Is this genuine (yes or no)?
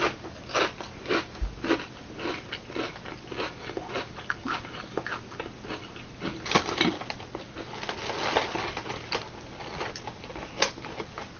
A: yes